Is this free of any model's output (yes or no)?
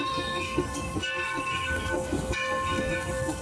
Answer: no